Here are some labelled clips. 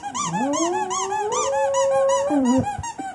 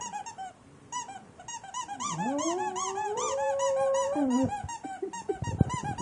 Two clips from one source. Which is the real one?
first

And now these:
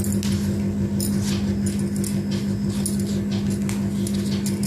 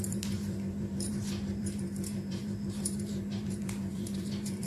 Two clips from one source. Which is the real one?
first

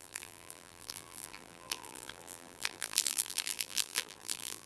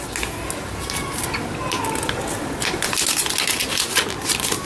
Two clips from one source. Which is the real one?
second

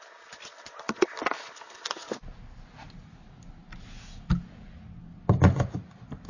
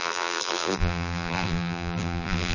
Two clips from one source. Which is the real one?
first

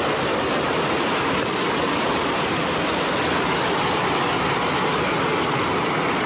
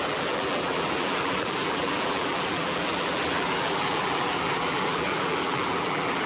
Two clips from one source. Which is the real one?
first